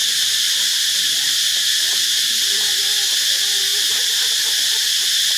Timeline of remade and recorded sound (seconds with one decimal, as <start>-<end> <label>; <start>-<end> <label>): 0.0-2.3 remade; 2.3-5.4 recorded